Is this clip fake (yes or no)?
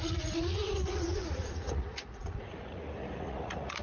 yes